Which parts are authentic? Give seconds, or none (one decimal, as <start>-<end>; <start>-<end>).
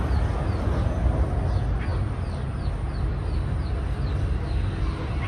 0.0-5.3